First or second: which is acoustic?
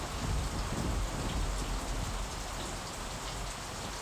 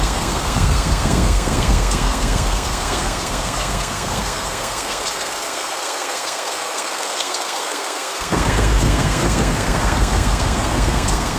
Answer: first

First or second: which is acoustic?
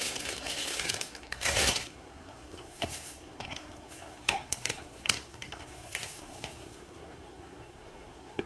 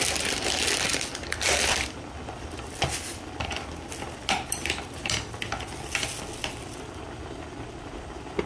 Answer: second